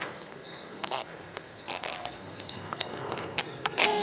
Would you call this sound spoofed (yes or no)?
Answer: yes